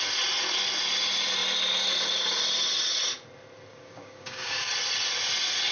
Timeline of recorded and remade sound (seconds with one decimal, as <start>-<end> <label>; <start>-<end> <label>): 0.0-3.7 recorded; 3.7-4.7 remade; 4.7-5.7 recorded